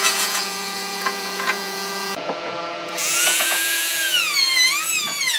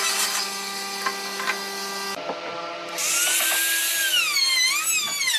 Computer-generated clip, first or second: first